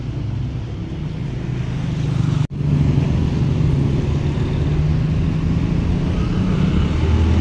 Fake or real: real